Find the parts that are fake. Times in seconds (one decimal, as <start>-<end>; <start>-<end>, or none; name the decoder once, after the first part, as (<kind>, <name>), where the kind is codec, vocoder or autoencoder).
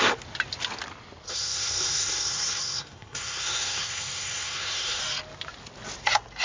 1.3-5.0 (codec, SNAC)